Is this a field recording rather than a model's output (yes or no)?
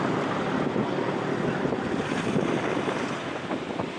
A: no